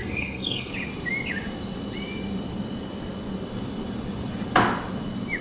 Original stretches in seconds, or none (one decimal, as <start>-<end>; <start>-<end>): 0.7-5.4